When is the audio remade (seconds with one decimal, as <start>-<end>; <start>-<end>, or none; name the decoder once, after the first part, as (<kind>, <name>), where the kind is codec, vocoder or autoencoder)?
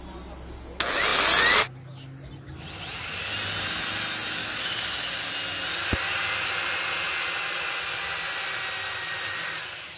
4.4-5.3 (codec, DAC)